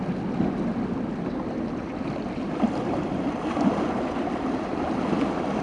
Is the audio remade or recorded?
recorded